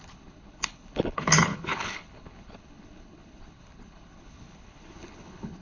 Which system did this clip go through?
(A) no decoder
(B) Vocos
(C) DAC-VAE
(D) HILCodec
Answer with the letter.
D